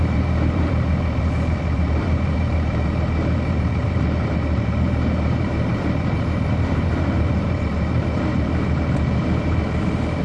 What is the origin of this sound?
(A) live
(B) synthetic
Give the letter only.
B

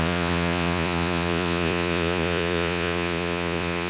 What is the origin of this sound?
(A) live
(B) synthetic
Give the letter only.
B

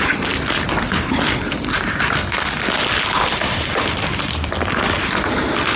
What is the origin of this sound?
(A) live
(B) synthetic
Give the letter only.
A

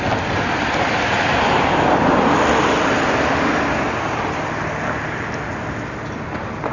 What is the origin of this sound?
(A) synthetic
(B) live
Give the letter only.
B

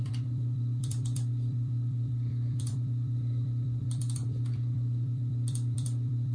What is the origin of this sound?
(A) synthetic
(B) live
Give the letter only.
A